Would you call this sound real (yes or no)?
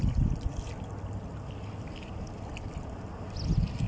yes